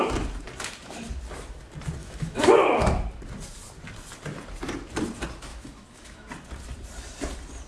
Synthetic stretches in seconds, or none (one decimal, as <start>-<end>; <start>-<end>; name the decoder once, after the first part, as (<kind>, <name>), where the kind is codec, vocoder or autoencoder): 2.0-2.5 (autoencoder, DAC-VAE); 5.5-6.3